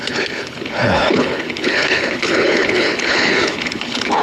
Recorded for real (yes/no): no